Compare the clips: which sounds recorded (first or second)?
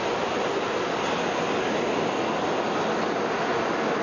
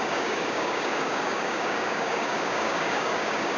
first